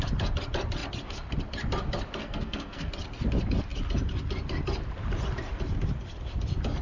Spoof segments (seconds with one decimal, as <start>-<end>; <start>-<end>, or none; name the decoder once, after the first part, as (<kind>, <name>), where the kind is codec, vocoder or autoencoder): 2.2-2.9 (codec, SNAC)